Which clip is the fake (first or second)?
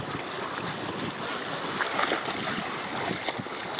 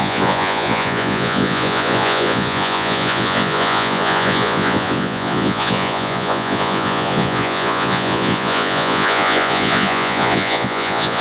second